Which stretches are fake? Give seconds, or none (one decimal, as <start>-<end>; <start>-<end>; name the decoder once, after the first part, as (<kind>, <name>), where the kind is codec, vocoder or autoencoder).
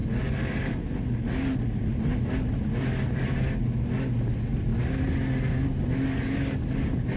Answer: none